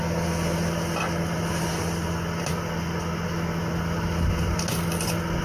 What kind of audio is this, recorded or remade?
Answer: recorded